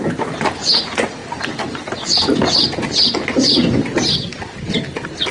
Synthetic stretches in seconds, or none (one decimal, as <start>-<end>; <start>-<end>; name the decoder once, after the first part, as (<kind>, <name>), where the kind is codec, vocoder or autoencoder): none